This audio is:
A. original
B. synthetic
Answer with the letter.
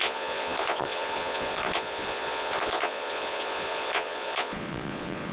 B